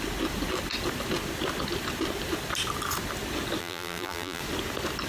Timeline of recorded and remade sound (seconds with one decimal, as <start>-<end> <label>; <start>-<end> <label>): 0.0-3.6 recorded; 3.6-4.4 remade; 4.4-5.1 recorded